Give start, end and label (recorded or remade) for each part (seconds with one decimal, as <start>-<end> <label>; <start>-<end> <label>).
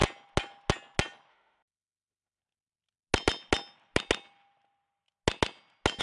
0.0-1.3 recorded; 1.3-2.4 remade; 2.4-6.0 recorded